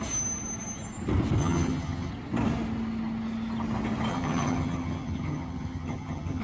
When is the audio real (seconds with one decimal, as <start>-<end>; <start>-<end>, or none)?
0.0-1.4; 2.1-4.1